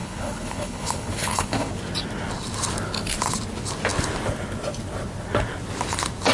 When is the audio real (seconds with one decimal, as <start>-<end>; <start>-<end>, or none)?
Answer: 1.7-6.3

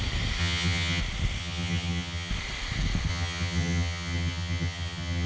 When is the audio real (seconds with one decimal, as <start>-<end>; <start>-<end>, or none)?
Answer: 0.0-0.4; 1.0-1.4; 2.3-3.1